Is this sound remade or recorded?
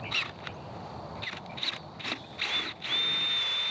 recorded